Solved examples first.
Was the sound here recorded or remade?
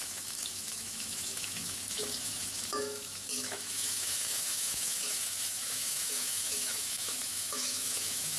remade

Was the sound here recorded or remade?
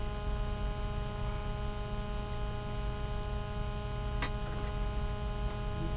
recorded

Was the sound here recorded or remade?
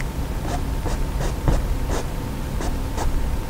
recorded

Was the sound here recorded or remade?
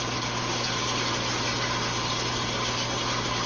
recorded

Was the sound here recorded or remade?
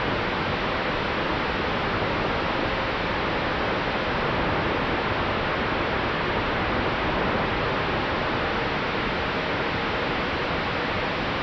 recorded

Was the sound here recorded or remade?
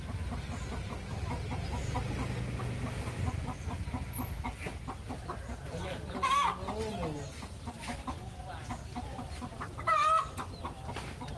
recorded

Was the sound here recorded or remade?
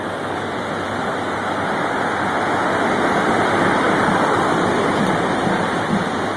recorded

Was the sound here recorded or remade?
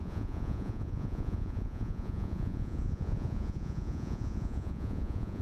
remade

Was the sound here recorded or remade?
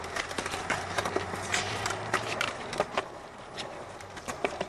remade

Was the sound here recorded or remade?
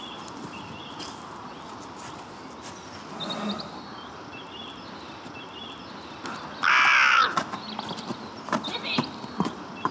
recorded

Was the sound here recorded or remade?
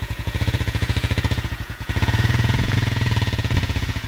remade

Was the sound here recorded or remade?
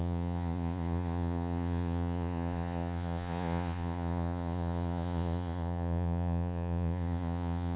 remade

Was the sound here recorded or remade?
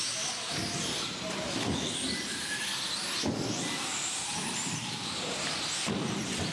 recorded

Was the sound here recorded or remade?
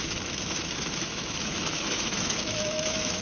remade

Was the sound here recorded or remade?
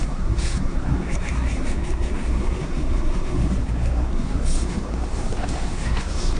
remade